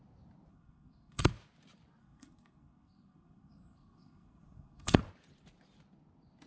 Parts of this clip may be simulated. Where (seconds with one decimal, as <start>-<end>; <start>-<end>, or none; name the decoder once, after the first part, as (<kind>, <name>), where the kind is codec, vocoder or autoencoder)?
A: 0.5-1.3 (codec, SNAC); 2.0-5.0